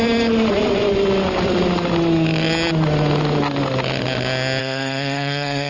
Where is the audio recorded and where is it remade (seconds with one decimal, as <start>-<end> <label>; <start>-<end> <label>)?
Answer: 0.0-4.6 recorded; 4.6-5.7 remade